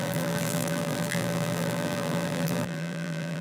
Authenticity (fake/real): fake